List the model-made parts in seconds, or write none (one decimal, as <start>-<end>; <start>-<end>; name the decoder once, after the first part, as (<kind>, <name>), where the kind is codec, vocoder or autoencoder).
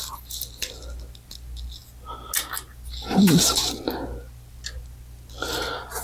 none